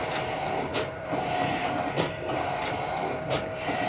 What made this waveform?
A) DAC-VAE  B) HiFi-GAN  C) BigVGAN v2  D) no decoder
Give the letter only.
C